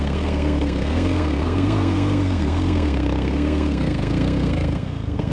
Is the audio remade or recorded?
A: remade